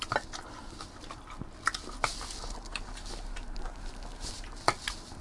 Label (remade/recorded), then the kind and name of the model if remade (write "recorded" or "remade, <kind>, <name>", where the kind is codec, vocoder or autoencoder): recorded